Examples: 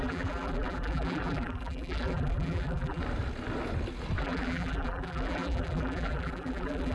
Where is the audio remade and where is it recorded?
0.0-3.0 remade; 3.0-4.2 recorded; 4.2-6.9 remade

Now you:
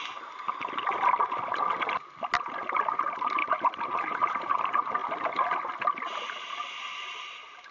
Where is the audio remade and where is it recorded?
0.0-3.4 recorded; 3.4-4.6 remade; 4.6-7.7 recorded

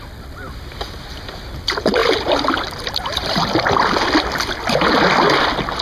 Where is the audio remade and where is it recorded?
0.0-5.8 recorded

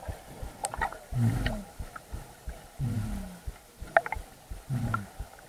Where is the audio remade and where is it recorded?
0.0-0.6 recorded; 0.6-2.8 remade; 2.8-4.5 recorded; 4.5-5.1 remade; 5.1-5.5 recorded

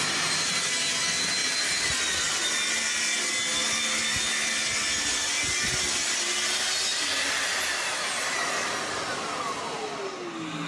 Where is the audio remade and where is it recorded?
0.0-10.7 recorded

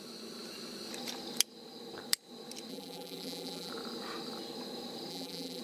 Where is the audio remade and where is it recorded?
0.0-2.7 recorded; 2.7-3.7 remade; 3.7-5.1 recorded; 5.1-5.6 remade

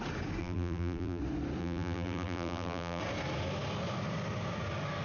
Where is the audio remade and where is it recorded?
0.0-0.4 recorded; 0.4-1.2 remade; 1.2-1.6 recorded; 1.6-3.0 remade; 3.0-5.0 recorded

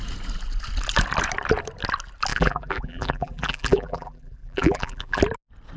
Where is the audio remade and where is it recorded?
0.0-2.3 recorded; 2.3-5.2 remade; 5.2-5.8 recorded